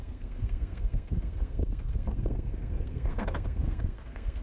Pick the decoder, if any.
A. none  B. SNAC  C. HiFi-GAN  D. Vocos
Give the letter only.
B